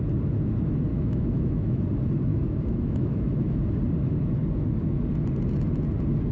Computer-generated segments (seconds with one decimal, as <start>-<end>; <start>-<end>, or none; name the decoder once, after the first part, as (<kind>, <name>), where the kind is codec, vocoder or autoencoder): 0.9-1.8 (autoencoder, DAC-VAE); 2.3-3.6